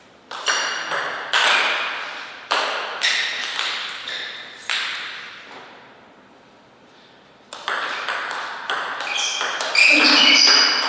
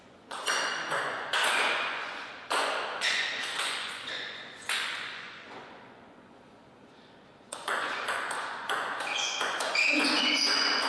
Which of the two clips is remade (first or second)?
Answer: second